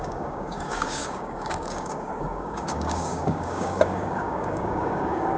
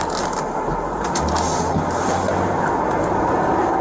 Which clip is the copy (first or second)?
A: first